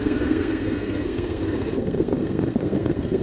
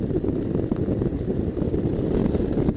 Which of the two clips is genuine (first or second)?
second